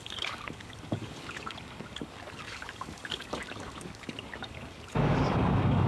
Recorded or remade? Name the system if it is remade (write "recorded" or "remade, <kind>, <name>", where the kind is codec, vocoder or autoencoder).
remade, codec, DAC